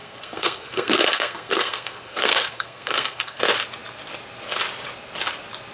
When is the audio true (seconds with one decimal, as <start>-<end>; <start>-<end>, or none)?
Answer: 3.4-5.7